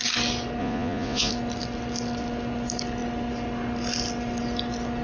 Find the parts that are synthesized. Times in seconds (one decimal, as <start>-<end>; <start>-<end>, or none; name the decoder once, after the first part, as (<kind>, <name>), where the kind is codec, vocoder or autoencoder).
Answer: 0.6-1.3 (vocoder, Vocos)